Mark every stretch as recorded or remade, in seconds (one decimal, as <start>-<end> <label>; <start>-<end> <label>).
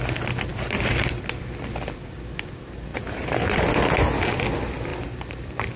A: 0.0-0.5 recorded; 0.5-1.0 remade; 1.0-2.9 recorded; 2.9-3.6 remade; 3.6-4.9 recorded; 4.9-5.8 remade